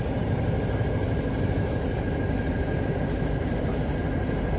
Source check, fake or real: fake